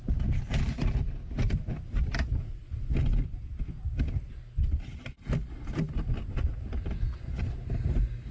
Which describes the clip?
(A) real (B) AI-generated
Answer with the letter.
A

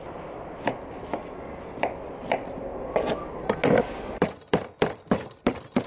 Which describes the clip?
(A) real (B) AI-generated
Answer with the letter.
A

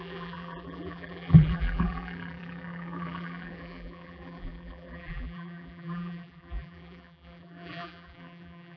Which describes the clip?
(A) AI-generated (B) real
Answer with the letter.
A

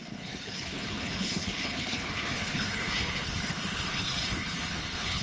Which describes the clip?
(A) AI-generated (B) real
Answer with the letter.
A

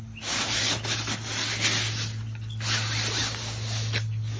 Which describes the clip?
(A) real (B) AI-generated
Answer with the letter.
A